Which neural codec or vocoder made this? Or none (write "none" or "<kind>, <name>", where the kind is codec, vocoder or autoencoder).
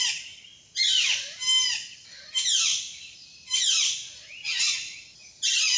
none